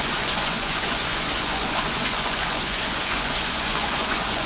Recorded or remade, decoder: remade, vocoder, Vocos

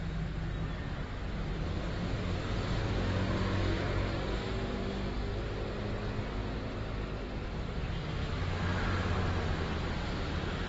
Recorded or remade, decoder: recorded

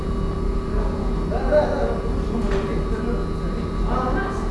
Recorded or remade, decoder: recorded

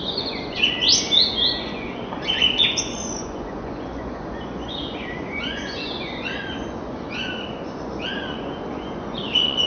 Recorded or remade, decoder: remade, vocoder, Vocos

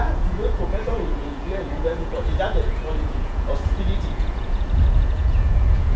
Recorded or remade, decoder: remade, vocoder, Vocos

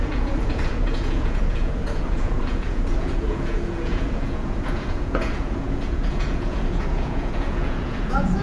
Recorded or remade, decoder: remade, vocoder, Vocos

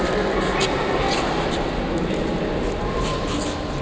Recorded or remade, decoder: recorded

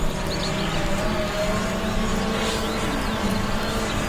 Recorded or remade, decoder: recorded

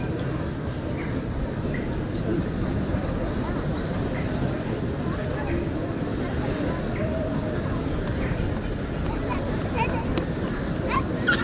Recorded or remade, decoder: recorded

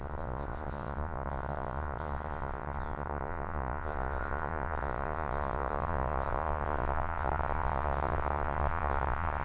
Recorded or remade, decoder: remade, vocoder, Vocos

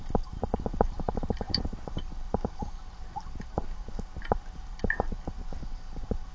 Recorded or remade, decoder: recorded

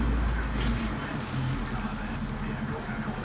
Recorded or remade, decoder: recorded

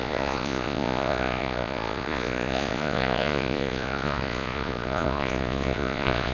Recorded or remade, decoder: remade, vocoder, Vocos